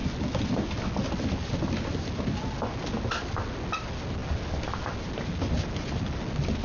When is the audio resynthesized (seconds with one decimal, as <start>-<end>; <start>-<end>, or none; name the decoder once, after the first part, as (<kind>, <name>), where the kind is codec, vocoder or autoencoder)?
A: none